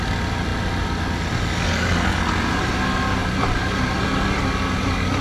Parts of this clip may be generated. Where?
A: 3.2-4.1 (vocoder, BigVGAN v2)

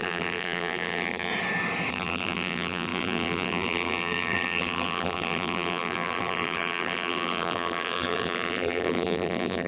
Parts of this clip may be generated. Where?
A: 0.0-1.3 (vocoder, BigVGAN v2); 1.9-9.7